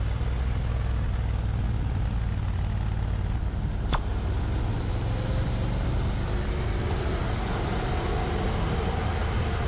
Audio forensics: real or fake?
real